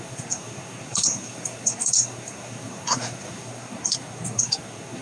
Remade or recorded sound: remade